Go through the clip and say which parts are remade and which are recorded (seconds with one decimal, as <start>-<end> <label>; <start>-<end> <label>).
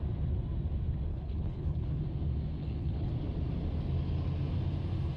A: 0.0-1.1 recorded; 1.1-2.0 remade; 2.0-2.6 recorded; 2.6-3.1 remade; 3.1-5.2 recorded